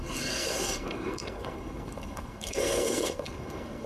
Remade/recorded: remade